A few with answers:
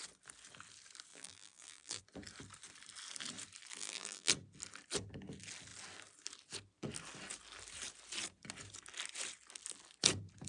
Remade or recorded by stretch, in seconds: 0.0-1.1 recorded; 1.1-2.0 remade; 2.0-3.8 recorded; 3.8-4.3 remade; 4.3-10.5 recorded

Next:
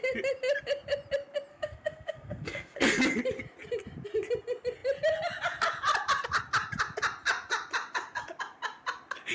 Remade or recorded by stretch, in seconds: 0.0-1.5 recorded; 1.5-3.0 remade; 3.0-9.3 recorded

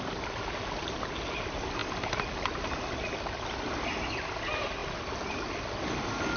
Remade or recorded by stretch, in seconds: 0.0-6.4 recorded

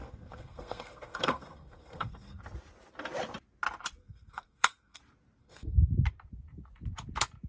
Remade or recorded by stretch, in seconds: 0.0-2.4 remade; 2.4-4.0 recorded; 4.0-5.0 remade; 5.0-5.4 recorded; 5.4-5.9 remade; 5.9-7.5 recorded

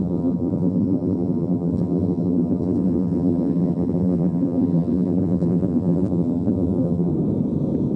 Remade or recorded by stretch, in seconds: 0.0-7.1 remade; 7.1-8.0 recorded

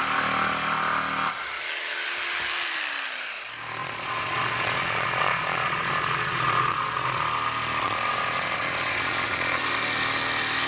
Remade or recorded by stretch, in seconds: 0.0-3.8 recorded; 3.8-7.2 remade; 7.2-7.8 recorded; 7.8-9.6 remade; 9.6-10.7 recorded

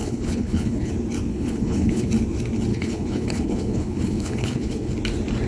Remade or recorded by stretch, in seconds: 0.0-0.9 remade; 0.9-1.3 recorded; 1.3-2.1 remade; 2.1-2.7 recorded; 2.7-4.9 remade; 4.9-5.5 recorded

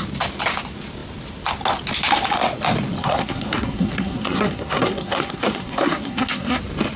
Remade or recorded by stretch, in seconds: 0.0-3.0 recorded; 3.0-6.6 remade; 6.6-7.0 recorded